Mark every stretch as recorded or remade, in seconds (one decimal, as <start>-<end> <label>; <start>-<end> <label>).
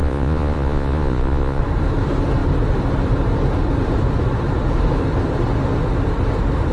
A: 0.0-1.6 remade; 1.6-6.7 recorded